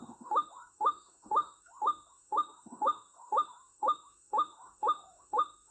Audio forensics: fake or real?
fake